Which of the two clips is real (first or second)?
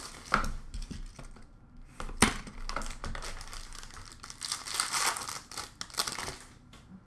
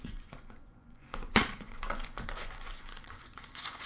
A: first